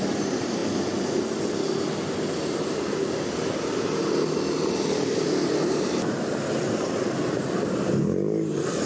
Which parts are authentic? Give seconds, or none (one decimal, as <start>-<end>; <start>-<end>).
0.0-8.9